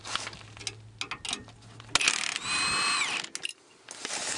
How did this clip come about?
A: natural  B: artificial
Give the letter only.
A